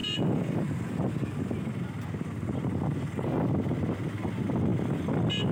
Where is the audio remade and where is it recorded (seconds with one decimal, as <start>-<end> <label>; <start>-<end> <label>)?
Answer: 0.0-5.5 recorded